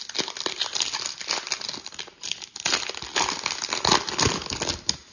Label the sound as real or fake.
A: real